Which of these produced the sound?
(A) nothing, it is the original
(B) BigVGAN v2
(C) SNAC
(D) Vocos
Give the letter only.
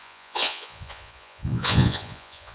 D